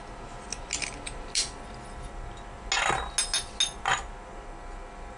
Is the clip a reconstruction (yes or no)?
no